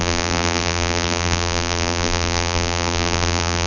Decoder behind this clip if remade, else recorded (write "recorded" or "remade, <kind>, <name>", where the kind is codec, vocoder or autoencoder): remade, vocoder, BigVGAN v2